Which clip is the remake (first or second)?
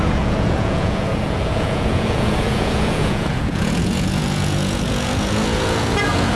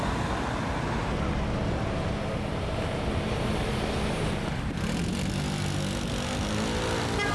first